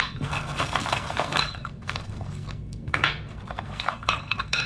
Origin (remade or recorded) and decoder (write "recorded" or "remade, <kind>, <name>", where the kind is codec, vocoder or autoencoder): remade, codec, SNAC